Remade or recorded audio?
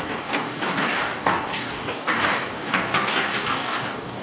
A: remade